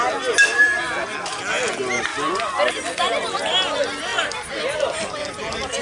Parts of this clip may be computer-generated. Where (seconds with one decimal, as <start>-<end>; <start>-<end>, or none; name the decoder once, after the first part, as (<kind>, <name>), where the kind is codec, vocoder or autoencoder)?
2.1-2.7 (vocoder, BigVGAN v2); 4.1-5.0